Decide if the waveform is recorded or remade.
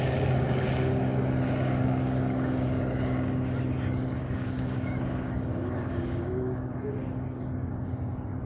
remade